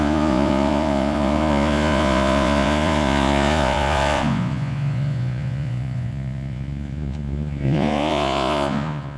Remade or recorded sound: remade